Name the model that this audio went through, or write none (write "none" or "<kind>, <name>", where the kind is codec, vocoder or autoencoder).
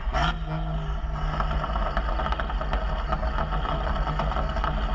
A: none